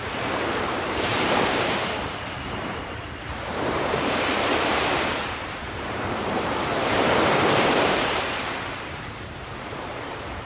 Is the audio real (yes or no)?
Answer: no